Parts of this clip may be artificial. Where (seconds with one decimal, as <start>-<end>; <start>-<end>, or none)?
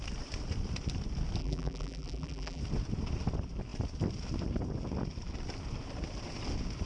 1.4-2.6